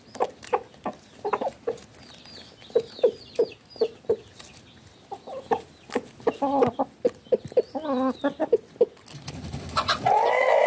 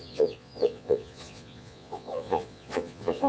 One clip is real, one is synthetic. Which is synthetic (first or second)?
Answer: second